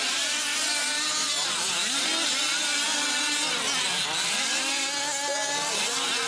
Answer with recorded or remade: recorded